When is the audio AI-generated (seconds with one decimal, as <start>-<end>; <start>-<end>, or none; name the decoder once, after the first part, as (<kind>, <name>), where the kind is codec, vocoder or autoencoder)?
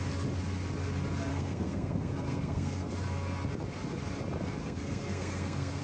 1.3-2.9 (codec, SNAC); 4.6-5.8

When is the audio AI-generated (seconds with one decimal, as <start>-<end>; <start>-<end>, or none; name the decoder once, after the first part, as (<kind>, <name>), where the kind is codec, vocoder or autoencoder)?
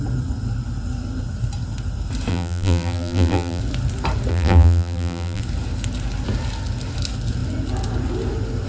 2.3-3.6 (vocoder, BigVGAN v2); 4.3-5.4